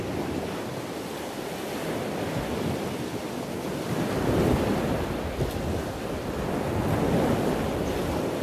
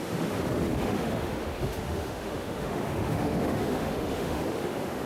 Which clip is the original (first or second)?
first